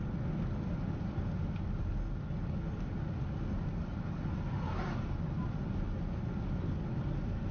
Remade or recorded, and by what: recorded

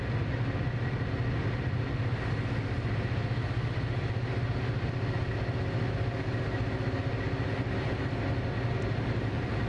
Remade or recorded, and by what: recorded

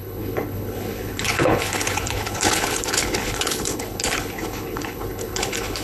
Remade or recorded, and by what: remade, codec, HILCodec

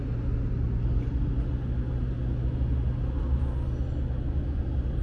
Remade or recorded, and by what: recorded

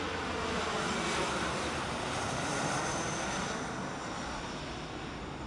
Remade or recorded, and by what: recorded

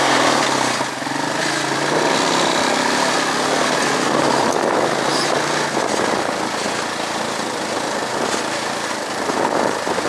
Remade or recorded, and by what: recorded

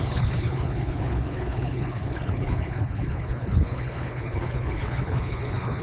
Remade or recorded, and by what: remade, codec, HILCodec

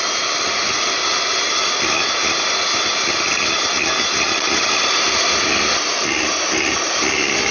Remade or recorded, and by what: recorded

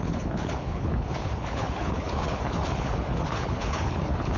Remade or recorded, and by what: remade, codec, HILCodec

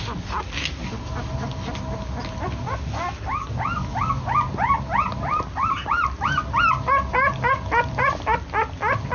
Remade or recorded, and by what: recorded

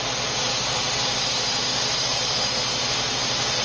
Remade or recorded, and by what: recorded